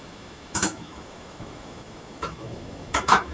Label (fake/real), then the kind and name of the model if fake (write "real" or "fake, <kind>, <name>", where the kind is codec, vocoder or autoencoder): fake, autoencoder, DAC-VAE